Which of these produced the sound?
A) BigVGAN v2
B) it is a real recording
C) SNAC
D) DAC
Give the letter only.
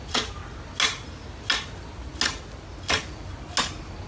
B